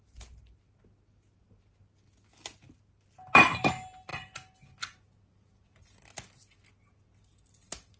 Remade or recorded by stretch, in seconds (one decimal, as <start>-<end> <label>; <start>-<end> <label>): 0.0-8.0 recorded